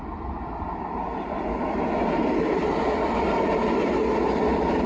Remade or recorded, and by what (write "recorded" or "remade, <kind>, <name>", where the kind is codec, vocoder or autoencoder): recorded